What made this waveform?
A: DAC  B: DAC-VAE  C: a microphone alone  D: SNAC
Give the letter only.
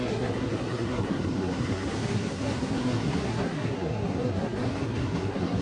D